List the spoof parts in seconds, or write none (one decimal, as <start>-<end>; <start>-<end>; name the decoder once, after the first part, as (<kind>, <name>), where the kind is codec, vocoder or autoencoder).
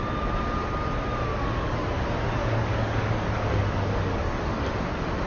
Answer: 1.3-1.8 (codec, DAC); 2.4-4.7